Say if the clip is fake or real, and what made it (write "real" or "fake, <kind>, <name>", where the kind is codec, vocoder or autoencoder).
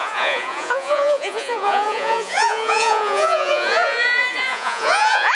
fake, vocoder, Vocos